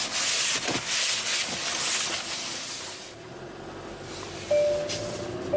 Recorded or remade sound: recorded